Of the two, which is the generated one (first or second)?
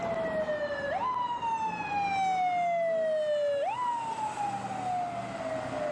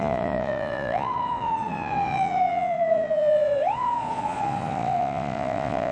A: second